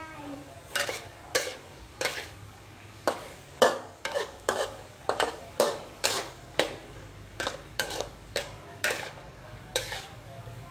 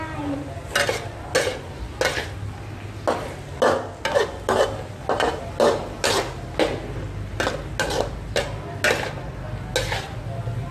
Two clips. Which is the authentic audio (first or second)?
second